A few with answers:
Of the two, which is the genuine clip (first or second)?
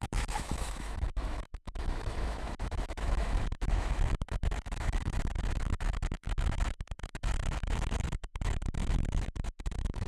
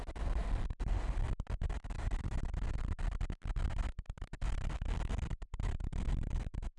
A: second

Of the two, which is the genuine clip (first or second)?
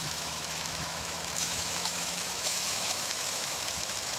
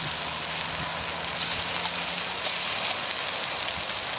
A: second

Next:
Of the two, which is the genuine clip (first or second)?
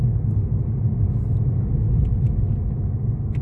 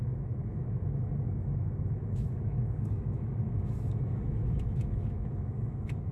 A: first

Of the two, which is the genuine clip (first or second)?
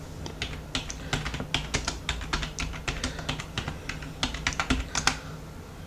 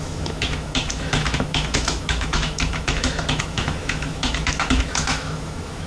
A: first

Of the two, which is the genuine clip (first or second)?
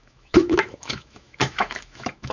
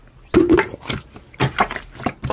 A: second